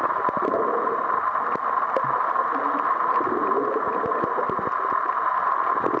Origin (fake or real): real